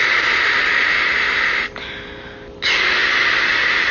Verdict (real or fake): real